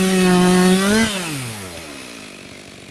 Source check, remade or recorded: recorded